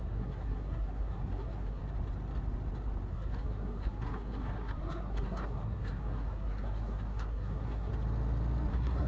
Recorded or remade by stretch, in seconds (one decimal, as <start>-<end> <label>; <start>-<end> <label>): 0.0-1.8 remade; 1.8-3.1 recorded; 3.1-7.9 remade; 7.9-8.7 recorded; 8.7-9.1 remade